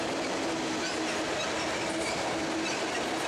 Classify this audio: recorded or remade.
recorded